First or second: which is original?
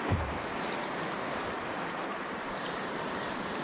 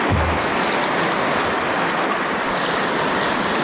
second